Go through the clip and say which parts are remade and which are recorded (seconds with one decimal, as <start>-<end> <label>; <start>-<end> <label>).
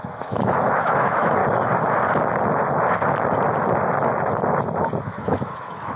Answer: 0.0-1.4 remade; 1.4-5.0 recorded; 5.0-6.0 remade